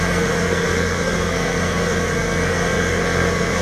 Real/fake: fake